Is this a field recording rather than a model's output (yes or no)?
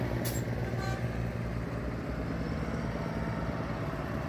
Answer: yes